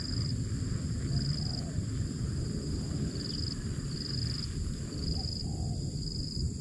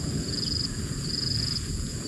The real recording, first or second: first